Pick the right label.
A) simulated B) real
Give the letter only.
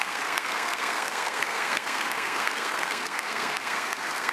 A